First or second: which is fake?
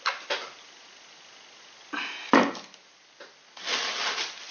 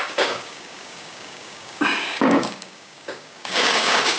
second